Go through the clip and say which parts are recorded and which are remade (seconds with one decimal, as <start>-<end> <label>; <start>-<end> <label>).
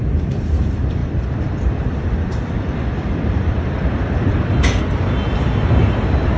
0.0-1.0 recorded; 1.0-4.8 remade; 4.8-6.4 recorded